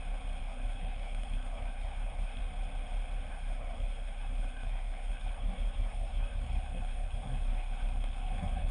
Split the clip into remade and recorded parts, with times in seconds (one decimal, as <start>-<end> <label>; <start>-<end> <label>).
0.0-0.4 recorded; 0.4-2.4 remade; 2.4-3.3 recorded; 3.3-8.7 remade